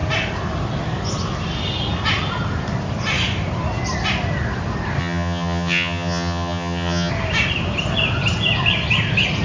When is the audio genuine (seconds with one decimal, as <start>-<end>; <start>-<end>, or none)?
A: 0.0-5.0; 7.1-9.4